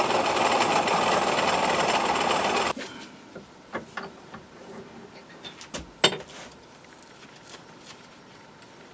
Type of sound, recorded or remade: recorded